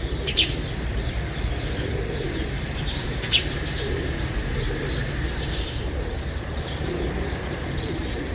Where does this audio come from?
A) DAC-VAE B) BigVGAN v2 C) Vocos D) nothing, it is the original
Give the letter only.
B